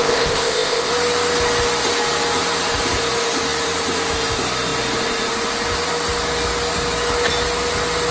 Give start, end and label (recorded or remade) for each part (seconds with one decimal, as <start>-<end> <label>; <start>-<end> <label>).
0.0-0.9 remade; 0.9-8.1 recorded